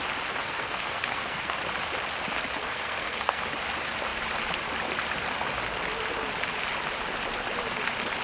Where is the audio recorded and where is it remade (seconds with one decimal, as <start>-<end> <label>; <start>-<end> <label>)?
0.0-0.4 recorded; 0.4-1.6 remade; 1.6-2.6 recorded; 2.6-3.4 remade; 3.4-8.2 recorded